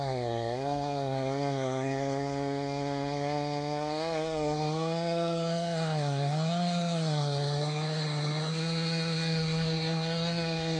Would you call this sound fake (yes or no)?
yes